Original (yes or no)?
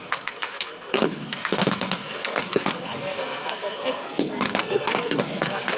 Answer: no